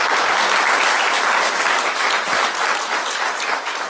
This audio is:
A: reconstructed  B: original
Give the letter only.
B